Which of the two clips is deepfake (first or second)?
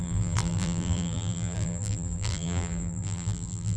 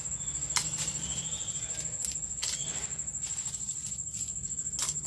first